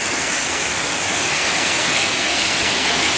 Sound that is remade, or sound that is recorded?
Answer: remade